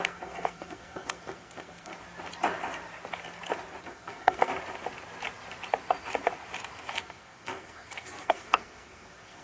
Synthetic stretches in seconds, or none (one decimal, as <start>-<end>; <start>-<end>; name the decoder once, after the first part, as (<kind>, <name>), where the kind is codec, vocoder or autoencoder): 0.0-1.9 (codec, SNAC); 3.8-4.5; 6.9-9.4